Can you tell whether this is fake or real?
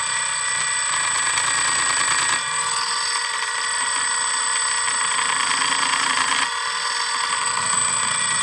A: real